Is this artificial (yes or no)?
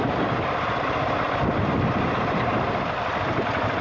no